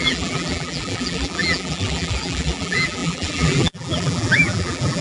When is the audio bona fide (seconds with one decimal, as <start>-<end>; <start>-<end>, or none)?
none